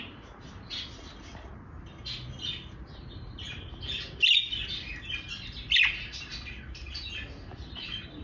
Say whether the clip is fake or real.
real